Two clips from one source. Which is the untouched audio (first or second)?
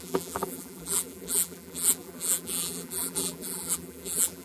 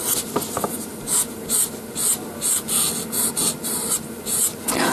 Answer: second